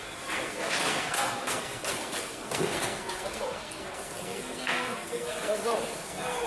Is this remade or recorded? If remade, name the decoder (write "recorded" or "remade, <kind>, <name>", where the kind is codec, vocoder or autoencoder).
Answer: remade, codec, SNAC